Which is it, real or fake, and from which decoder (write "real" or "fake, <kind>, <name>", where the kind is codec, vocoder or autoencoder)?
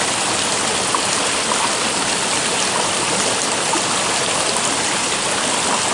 real